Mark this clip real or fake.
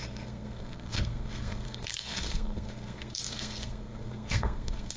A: fake